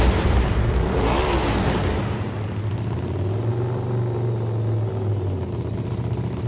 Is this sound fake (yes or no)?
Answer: no